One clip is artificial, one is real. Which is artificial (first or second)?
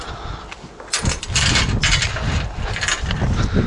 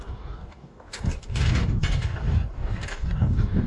second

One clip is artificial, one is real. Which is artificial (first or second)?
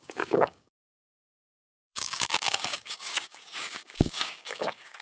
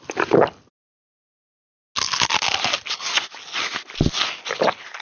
first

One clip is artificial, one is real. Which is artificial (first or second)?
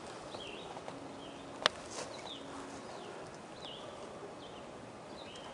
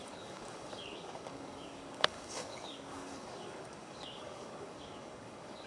second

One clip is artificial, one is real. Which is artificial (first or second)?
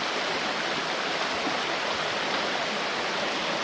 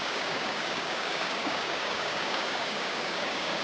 second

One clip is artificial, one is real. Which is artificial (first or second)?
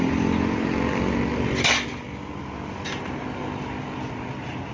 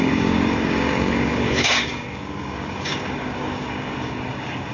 second